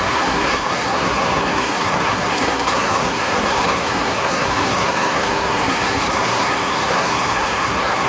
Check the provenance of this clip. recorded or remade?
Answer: remade